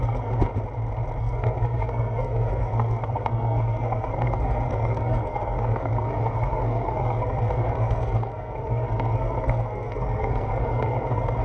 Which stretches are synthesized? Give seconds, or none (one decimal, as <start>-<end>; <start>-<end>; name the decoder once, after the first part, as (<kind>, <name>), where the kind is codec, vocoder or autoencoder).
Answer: 0.0-0.5 (codec, SNAC); 1.2-11.4